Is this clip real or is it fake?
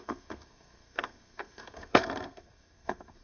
fake